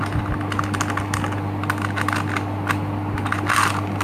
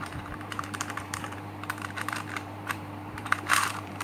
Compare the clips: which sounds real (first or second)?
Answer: first